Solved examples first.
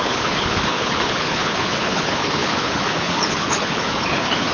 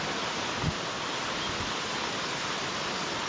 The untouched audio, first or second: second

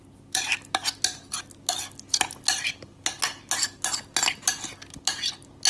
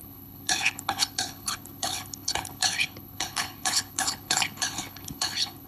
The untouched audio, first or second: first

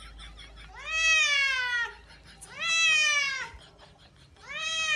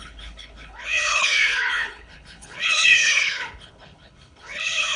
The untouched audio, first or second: first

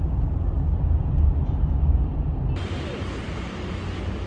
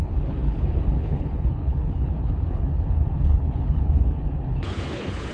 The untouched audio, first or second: first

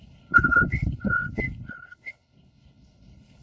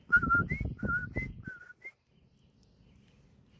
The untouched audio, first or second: second